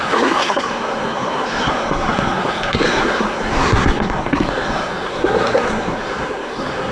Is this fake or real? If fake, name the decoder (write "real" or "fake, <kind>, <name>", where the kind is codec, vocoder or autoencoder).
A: fake, codec, SNAC